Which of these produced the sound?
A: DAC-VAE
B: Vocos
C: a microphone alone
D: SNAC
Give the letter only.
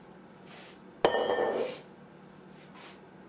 C